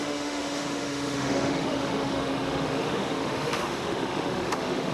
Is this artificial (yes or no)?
yes